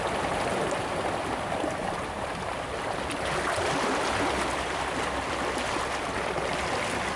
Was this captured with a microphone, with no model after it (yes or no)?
yes